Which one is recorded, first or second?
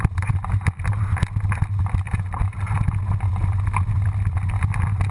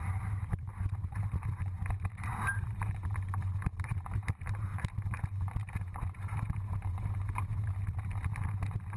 first